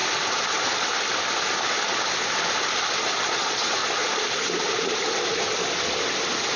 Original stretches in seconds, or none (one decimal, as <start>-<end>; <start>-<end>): 0.0-3.2; 3.8-6.6